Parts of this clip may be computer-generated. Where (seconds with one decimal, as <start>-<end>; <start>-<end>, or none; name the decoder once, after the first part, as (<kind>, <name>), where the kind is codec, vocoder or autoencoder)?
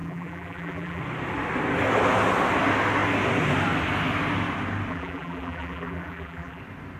0.0-1.0 (vocoder, BigVGAN v2); 4.9-6.6